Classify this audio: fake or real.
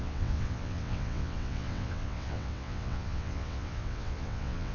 fake